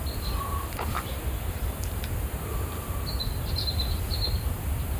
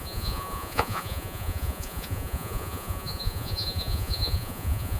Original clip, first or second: first